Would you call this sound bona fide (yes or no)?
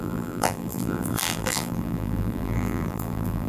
no